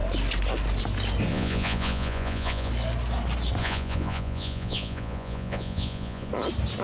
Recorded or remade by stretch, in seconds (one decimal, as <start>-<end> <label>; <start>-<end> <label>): 0.0-1.3 recorded; 1.3-2.7 remade; 2.7-3.6 recorded; 3.6-6.3 remade; 6.3-6.8 recorded